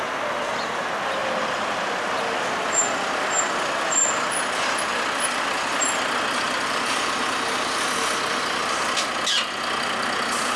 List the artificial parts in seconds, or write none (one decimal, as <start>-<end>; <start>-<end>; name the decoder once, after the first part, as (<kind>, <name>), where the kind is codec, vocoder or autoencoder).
none

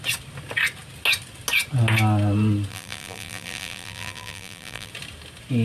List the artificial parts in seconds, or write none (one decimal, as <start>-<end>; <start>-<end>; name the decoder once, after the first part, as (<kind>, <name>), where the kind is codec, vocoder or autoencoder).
2.7-4.9 (vocoder, BigVGAN v2)

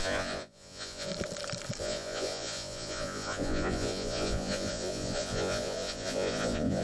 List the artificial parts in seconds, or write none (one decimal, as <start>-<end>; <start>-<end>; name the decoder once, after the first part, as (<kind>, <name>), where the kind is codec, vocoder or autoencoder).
0.0-1.1 (vocoder, Vocos); 1.8-6.8

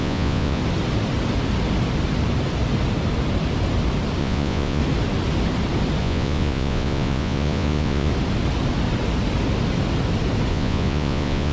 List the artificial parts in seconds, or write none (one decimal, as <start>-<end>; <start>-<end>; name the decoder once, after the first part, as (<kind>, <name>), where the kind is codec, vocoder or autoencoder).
0.0-0.6 (vocoder, Vocos); 4.2-4.8; 6.0-8.1; 10.5-11.5

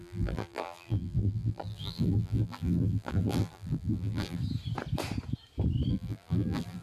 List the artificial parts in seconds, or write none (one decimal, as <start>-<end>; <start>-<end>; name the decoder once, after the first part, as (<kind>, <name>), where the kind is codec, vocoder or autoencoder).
0.0-4.4 (vocoder, BigVGAN v2); 5.9-6.8

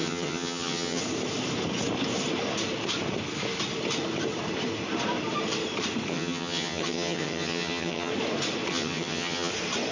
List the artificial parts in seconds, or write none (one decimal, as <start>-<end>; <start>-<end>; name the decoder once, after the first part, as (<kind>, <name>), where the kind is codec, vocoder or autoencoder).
0.0-1.0 (vocoder, HiFi-GAN); 6.1-8.1; 8.7-9.5

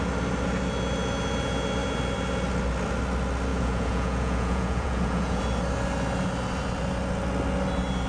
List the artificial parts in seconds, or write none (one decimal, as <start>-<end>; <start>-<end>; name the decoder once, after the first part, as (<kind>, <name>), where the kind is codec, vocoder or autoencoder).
3.5-5.4 (vocoder, Vocos)